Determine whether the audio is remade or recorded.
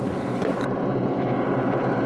recorded